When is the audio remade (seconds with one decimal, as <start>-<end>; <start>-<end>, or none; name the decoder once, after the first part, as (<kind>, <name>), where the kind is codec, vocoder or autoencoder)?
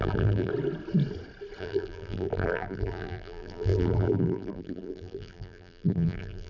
0.0-0.5 (vocoder, BigVGAN v2); 1.6-6.5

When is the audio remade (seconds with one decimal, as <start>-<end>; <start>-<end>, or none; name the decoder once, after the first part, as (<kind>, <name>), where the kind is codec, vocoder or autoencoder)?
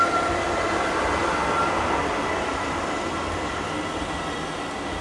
none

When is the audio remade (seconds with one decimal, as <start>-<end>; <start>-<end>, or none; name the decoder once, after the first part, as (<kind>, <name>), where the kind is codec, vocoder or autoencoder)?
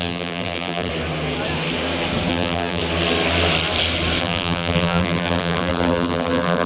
0.0-0.9 (vocoder, BigVGAN v2); 2.3-2.8; 4.2-6.7